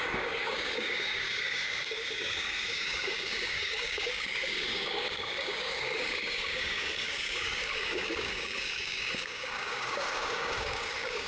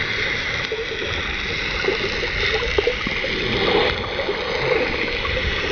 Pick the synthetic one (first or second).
first